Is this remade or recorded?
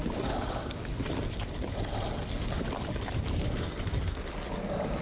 recorded